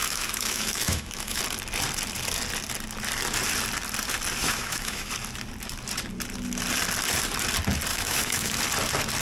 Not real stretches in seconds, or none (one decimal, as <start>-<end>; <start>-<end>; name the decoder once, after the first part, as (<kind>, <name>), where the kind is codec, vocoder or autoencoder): 0.0-1.4 (autoencoder, DAC-VAE); 4.4-5.1; 7.9-8.6